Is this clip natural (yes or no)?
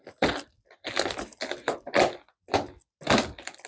yes